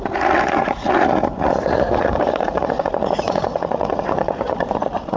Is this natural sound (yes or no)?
no